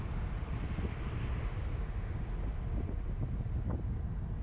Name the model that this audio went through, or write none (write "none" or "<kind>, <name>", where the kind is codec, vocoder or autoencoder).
none